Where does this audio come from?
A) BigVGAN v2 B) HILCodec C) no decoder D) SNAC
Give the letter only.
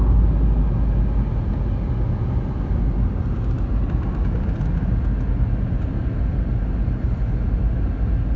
C